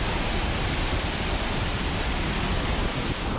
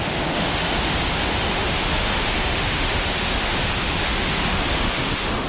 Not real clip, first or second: second